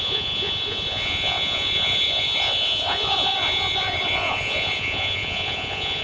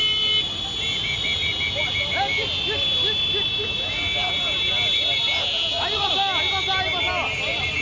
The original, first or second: second